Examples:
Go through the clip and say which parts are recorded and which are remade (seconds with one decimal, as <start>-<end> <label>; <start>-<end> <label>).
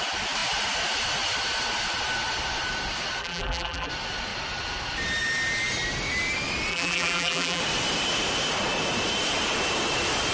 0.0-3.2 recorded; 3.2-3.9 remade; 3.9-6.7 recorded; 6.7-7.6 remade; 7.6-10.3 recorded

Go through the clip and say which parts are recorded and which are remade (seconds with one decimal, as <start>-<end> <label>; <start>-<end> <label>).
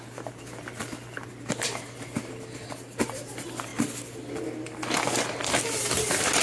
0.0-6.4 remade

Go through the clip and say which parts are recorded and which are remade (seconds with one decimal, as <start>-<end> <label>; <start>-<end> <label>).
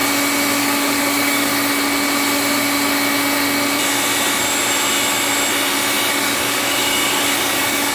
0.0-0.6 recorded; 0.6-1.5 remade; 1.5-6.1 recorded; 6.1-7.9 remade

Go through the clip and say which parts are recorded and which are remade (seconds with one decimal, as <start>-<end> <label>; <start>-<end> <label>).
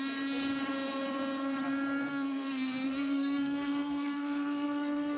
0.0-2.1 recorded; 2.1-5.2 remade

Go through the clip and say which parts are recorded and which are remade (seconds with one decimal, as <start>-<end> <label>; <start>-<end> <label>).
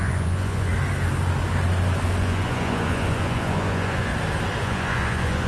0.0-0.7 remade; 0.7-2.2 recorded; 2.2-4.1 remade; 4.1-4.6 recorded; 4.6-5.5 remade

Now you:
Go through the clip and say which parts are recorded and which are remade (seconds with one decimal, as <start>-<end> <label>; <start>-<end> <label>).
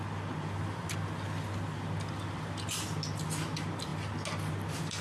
0.0-5.0 recorded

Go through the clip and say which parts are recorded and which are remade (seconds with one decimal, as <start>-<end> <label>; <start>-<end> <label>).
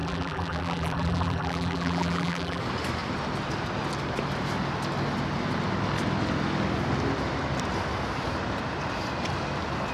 0.0-2.6 remade; 2.6-9.9 recorded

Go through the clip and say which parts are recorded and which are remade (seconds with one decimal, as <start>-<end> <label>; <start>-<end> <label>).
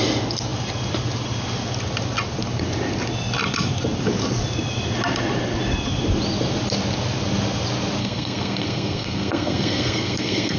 0.0-8.0 recorded; 8.0-10.6 remade